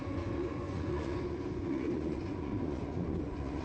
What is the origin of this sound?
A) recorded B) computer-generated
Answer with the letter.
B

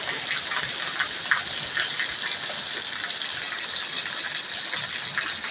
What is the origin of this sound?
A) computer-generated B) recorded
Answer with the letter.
B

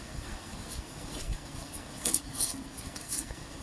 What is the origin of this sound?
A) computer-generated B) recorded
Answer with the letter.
A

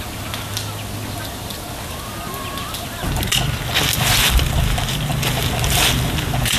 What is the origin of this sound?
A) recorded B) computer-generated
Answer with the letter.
A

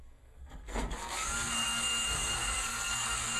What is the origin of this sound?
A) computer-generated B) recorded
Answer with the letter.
A